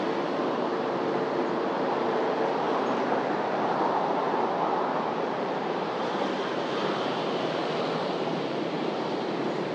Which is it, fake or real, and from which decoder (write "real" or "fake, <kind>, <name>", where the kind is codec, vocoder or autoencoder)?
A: fake, vocoder, BigVGAN v2